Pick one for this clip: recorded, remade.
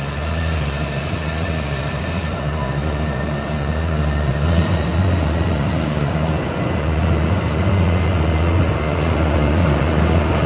remade